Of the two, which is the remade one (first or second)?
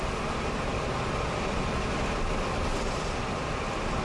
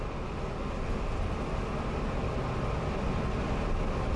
first